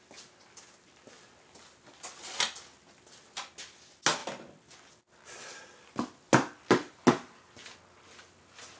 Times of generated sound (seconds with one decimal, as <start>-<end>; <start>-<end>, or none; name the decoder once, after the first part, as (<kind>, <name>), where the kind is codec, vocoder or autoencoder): none